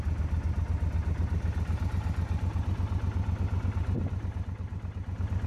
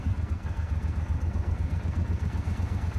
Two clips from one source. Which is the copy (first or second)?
second